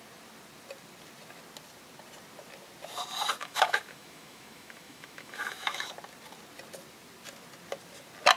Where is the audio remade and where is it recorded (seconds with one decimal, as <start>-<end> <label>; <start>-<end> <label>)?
0.0-3.4 recorded; 3.4-5.9 remade; 5.9-8.4 recorded